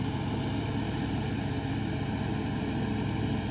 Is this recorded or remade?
recorded